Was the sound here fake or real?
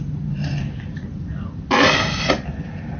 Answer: fake